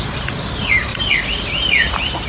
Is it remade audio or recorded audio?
recorded